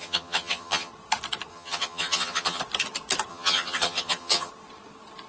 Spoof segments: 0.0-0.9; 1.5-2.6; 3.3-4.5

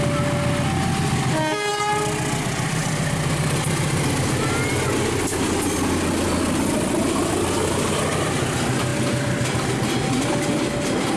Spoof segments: none